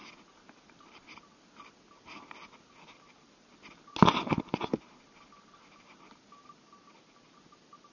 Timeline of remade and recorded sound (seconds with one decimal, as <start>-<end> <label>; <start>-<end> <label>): 0.0-7.9 recorded